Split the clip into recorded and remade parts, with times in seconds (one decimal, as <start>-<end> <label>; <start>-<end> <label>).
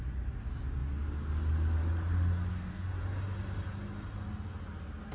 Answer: 0.0-2.5 recorded; 2.5-3.0 remade; 3.0-5.1 recorded